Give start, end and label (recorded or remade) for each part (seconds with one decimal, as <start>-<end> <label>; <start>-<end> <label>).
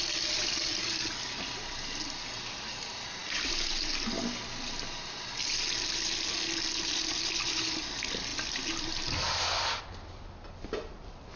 0.0-3.2 recorded; 3.2-3.7 remade; 3.7-11.4 recorded